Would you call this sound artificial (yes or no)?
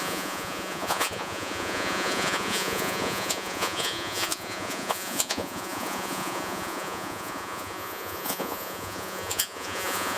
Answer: yes